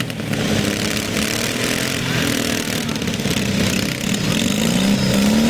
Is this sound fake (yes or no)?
no